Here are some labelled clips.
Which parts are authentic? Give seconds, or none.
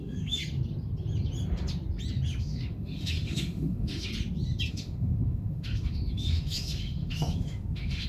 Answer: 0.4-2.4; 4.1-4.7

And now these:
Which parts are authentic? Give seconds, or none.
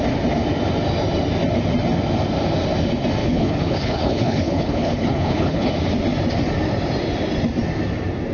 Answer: 0.0-3.2; 5.7-8.3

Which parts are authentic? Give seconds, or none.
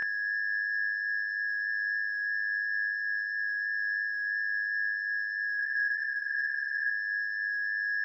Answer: 0.0-5.6; 6.9-8.0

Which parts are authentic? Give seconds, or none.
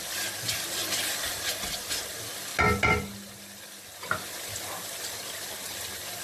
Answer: 0.0-6.2